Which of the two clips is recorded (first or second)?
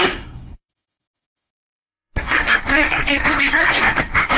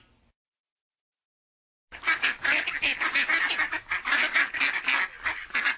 second